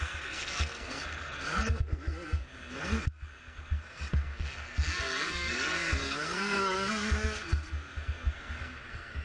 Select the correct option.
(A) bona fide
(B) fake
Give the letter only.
B